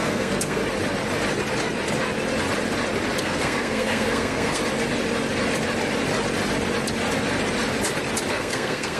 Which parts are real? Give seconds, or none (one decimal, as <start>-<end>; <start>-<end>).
0.6-3.2; 4.6-8.3